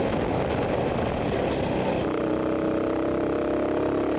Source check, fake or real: real